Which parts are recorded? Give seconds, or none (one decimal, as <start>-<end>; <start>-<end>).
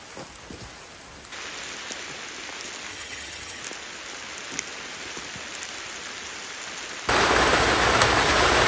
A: 0.0-2.9; 3.6-8.7